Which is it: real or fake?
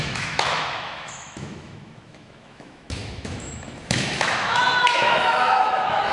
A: fake